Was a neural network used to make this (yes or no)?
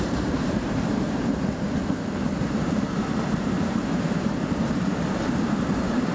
yes